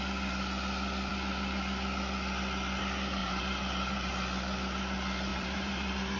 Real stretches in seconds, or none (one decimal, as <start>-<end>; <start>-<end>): 0.0-3.2; 4.1-5.3